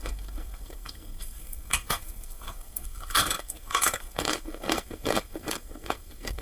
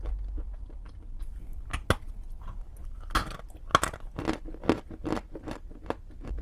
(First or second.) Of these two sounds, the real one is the second